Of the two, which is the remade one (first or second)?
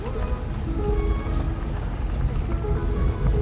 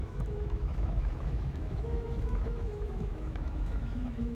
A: second